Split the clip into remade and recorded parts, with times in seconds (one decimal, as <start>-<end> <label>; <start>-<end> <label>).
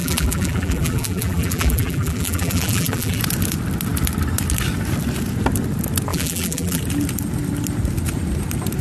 0.0-3.2 remade; 3.2-6.1 recorded; 6.1-6.8 remade; 6.8-8.8 recorded